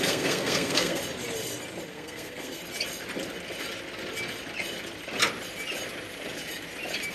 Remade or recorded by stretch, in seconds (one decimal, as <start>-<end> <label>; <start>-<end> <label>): 0.0-1.0 remade; 1.0-1.9 recorded; 1.9-2.6 remade; 2.6-7.1 recorded